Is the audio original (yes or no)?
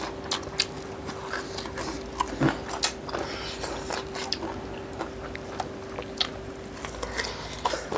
yes